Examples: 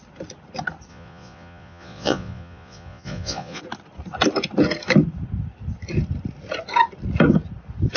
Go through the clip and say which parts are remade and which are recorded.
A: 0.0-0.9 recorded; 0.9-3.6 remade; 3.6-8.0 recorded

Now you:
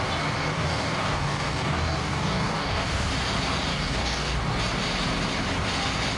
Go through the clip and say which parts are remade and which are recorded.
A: 0.0-0.5 recorded; 0.5-3.1 remade; 3.1-3.7 recorded; 3.7-4.3 remade; 4.3-6.2 recorded

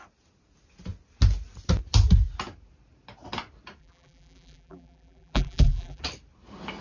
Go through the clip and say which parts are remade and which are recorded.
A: 0.0-3.8 recorded; 3.8-6.0 remade; 6.0-6.8 recorded

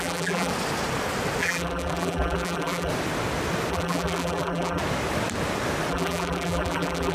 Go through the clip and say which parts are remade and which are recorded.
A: 0.0-0.5 remade; 0.5-1.4 recorded; 1.4-2.9 remade; 2.9-3.7 recorded; 3.7-4.8 remade; 4.8-5.9 recorded; 5.9-7.1 remade